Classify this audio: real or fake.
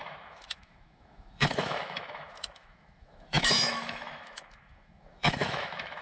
fake